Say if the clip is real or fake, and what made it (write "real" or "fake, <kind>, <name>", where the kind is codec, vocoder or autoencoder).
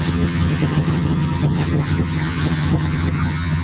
fake, vocoder, HiFi-GAN